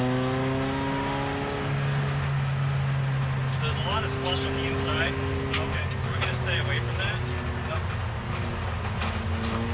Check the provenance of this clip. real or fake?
real